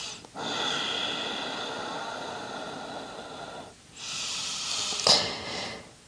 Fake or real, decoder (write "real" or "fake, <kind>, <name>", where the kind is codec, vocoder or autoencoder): real